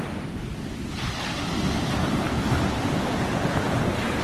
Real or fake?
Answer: real